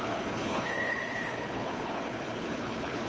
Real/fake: fake